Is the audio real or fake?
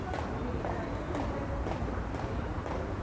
real